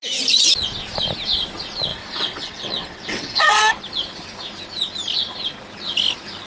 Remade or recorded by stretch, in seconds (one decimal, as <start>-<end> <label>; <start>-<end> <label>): 0.0-1.9 recorded; 1.9-3.7 remade; 3.7-6.5 recorded